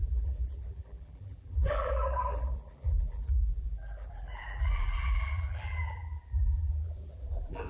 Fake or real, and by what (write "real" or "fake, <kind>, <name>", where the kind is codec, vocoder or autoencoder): fake, vocoder, BigVGAN v2